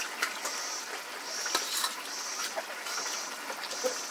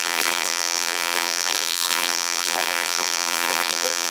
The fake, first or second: second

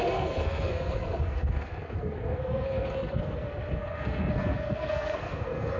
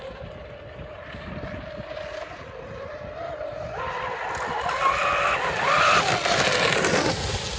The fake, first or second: first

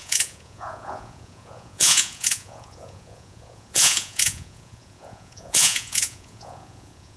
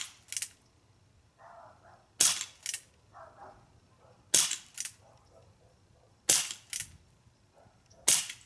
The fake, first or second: first